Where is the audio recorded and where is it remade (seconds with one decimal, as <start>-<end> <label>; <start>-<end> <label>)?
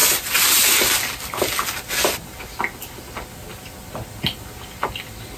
0.0-5.4 recorded